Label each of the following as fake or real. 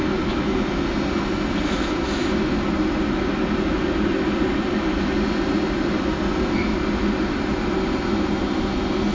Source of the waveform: real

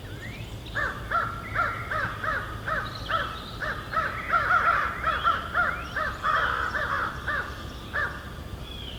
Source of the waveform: fake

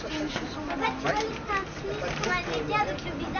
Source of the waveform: real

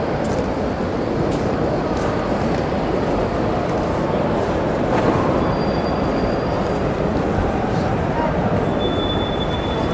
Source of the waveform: real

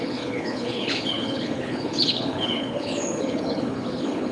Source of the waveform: fake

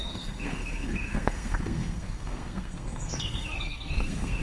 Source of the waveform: fake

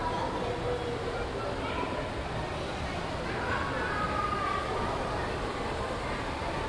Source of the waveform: real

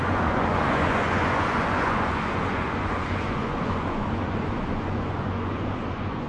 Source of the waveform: fake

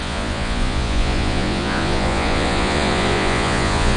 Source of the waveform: fake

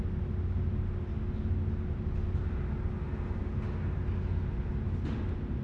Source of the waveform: real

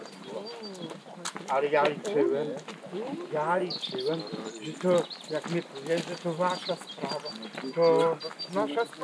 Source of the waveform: real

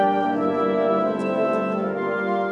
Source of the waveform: real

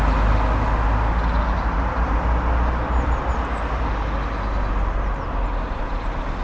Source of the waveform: real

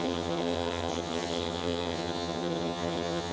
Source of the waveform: fake